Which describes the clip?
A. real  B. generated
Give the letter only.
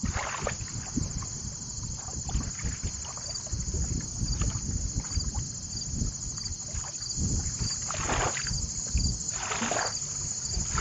A